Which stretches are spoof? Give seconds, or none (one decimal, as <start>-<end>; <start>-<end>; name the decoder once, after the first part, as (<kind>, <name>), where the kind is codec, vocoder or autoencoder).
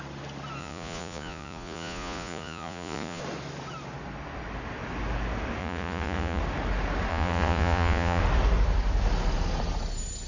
0.6-3.2 (vocoder, Vocos); 5.6-6.4; 7.1-8.2